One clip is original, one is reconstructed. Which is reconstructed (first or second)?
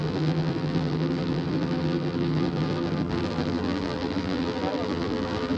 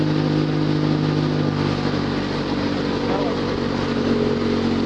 first